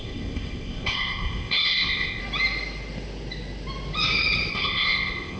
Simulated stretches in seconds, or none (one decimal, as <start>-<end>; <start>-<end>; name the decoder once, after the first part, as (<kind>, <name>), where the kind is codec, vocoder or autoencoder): 0.0-2.2 (codec, ZipCodec); 4.5-5.4